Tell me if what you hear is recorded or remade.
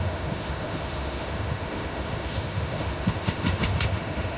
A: remade